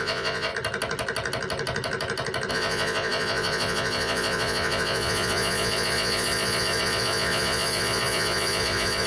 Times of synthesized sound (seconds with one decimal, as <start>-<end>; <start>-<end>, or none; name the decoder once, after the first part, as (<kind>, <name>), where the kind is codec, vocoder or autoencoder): 0.0-0.5 (vocoder, Vocos); 2.5-9.1